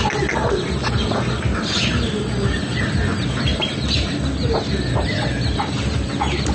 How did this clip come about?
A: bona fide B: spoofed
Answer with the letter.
A